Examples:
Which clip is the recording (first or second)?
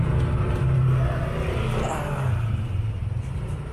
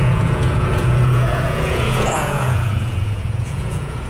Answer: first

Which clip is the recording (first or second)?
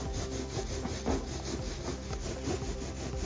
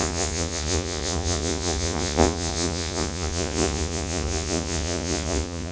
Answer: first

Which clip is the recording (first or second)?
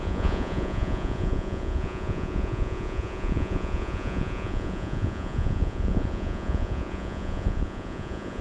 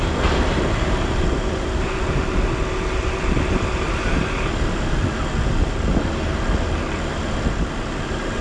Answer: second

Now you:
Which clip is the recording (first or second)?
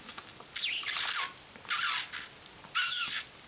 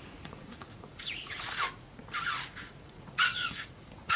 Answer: first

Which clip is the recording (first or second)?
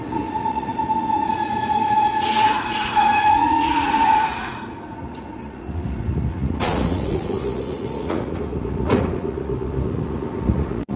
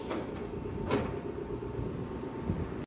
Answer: second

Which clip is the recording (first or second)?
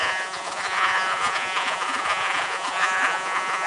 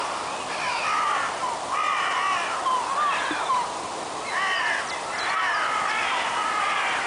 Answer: second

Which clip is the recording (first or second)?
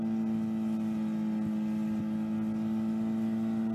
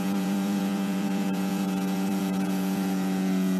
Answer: first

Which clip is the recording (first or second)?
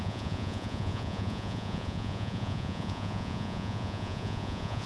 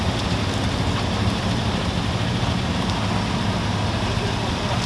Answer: second